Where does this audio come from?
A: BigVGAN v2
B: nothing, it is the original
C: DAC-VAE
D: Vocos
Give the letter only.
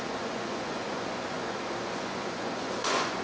D